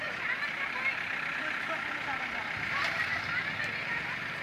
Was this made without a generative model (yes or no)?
yes